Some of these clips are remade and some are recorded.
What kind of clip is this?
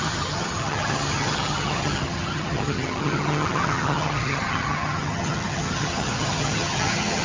remade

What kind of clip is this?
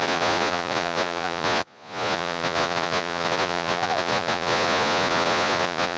remade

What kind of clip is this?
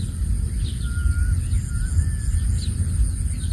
recorded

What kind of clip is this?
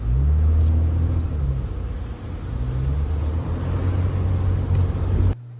recorded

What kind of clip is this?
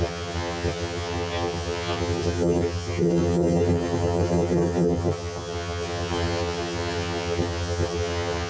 remade